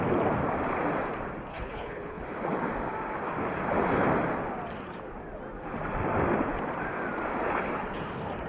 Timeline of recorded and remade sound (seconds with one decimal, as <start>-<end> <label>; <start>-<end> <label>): 0.0-1.5 recorded; 1.5-2.2 remade; 2.2-8.5 recorded